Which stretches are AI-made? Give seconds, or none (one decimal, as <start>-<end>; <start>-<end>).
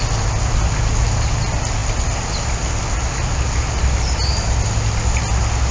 none